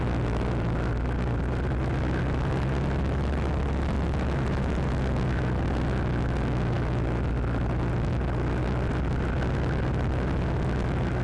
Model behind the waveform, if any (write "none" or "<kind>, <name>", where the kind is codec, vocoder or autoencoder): none